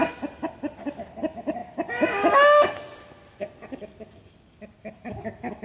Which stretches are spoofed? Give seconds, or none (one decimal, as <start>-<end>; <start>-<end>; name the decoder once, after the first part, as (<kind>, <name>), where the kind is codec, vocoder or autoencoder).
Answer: none